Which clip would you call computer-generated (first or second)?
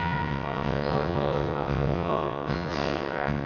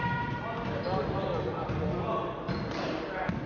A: first